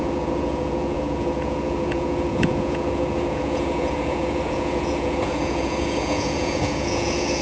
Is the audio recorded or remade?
remade